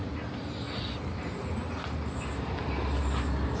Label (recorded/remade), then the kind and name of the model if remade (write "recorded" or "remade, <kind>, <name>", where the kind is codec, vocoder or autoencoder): recorded